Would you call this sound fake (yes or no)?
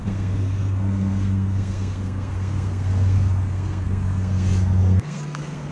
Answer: yes